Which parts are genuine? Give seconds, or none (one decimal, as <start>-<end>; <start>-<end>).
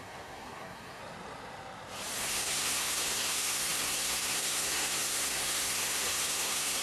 1.0-2.2